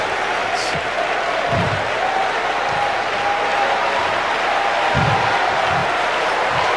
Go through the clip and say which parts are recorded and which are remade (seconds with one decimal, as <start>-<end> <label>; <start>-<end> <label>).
0.0-5.8 recorded; 5.8-6.8 remade